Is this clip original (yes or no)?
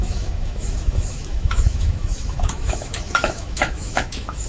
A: no